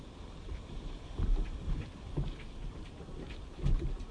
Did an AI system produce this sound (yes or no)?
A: yes